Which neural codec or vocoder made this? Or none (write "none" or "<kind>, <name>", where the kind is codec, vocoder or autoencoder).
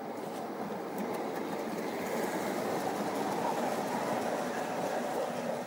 none